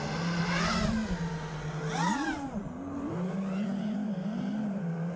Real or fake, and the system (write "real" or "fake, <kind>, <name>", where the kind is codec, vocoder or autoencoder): real